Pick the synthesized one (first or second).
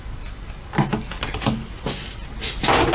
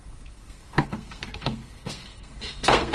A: second